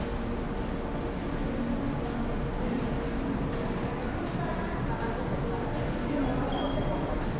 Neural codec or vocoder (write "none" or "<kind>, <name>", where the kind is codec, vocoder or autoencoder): none